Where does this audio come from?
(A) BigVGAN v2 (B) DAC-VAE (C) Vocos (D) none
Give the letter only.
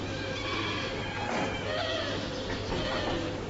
D